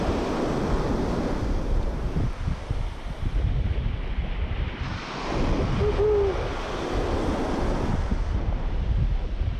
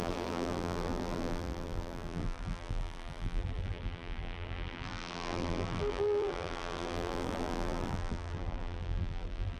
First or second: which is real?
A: first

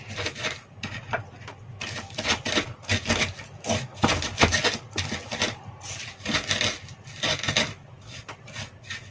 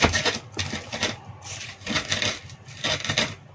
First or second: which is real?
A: first